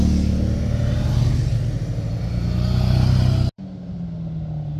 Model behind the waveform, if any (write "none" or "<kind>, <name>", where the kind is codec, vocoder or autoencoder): none